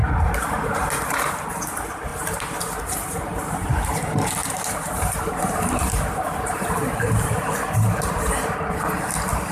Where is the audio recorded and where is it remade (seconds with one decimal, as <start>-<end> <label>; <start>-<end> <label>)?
0.0-1.5 remade; 1.5-3.3 recorded; 3.3-4.0 remade; 4.0-4.4 recorded; 4.4-8.7 remade; 8.7-9.5 recorded